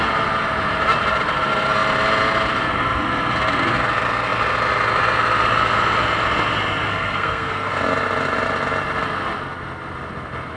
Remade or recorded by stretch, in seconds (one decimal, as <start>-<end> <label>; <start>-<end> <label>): 0.0-6.9 recorded; 6.9-7.7 remade; 7.7-10.6 recorded